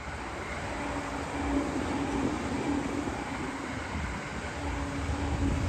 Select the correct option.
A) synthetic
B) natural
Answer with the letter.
B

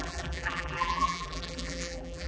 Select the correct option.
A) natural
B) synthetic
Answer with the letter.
B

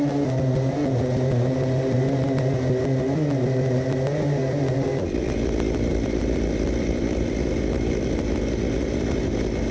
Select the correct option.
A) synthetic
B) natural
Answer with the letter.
B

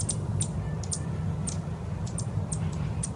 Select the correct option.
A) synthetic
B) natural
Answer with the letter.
A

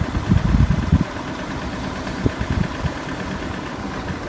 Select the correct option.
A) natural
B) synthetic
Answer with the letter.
A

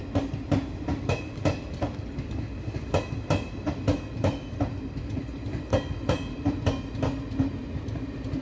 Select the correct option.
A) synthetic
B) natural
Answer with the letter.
B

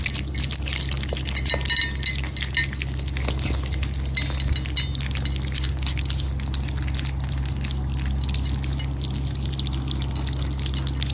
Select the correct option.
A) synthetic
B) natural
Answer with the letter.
B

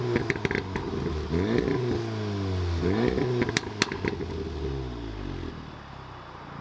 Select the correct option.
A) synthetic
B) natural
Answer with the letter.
B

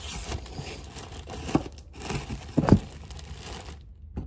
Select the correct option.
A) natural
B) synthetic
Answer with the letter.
A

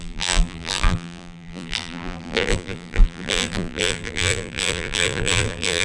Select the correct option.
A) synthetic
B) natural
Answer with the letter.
A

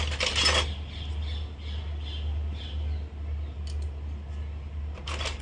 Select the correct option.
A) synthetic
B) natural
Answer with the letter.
B